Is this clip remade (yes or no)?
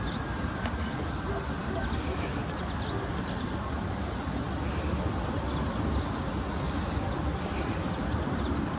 no